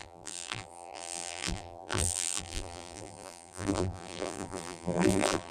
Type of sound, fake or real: fake